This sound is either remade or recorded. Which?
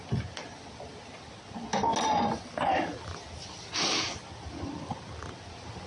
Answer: recorded